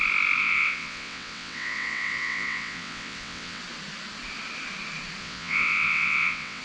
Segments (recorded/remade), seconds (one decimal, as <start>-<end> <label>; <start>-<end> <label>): 0.0-0.4 recorded; 0.4-3.6 remade; 3.6-5.2 recorded; 5.2-6.6 remade